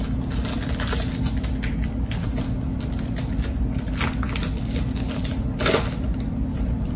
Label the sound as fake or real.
real